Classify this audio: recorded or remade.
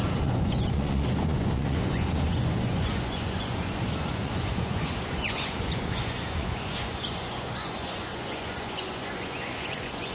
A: remade